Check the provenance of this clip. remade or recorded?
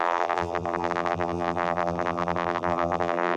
remade